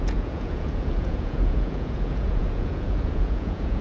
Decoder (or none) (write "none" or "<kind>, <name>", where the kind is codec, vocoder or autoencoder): vocoder, Vocos